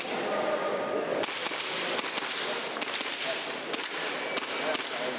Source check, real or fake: real